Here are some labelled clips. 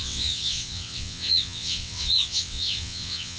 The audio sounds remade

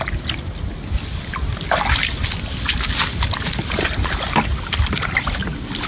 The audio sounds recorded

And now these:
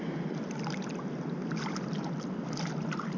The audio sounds recorded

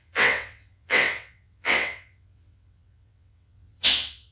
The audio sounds remade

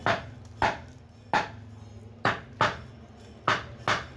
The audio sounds recorded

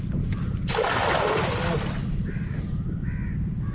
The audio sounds recorded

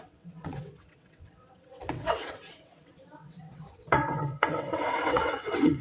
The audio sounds remade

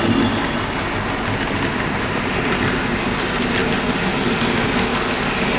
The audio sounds recorded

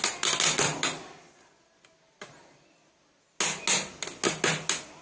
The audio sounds recorded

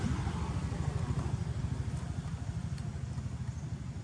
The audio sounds recorded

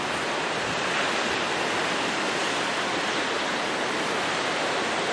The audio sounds recorded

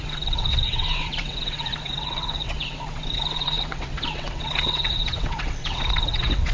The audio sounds remade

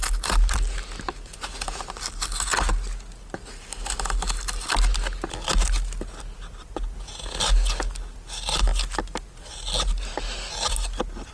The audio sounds recorded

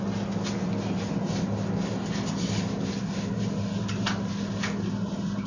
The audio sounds recorded